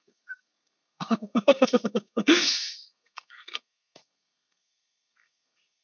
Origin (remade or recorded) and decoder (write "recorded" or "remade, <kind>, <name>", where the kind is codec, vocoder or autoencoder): remade, codec, SNAC